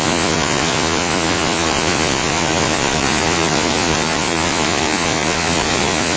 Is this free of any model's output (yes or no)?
no